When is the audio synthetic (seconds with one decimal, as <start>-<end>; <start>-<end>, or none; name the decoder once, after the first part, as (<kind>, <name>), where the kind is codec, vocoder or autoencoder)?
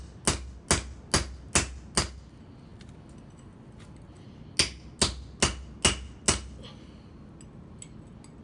none